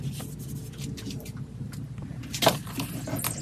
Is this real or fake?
real